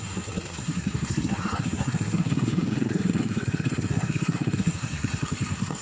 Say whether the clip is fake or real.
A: fake